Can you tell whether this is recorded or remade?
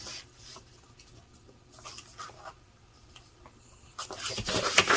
recorded